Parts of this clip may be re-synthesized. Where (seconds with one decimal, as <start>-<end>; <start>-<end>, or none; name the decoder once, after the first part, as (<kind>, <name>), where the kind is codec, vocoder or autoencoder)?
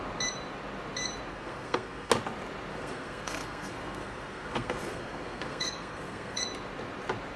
1.3-2.1 (codec, SNAC); 2.7-6.4